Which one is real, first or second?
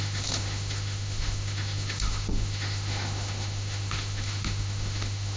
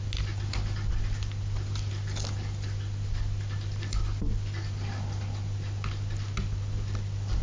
second